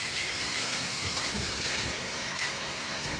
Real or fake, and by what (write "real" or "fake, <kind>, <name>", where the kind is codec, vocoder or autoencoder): fake, codec, SNAC